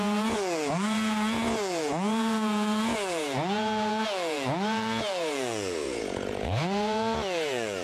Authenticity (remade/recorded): remade